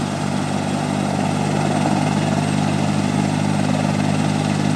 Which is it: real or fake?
real